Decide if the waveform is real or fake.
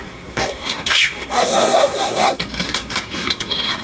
fake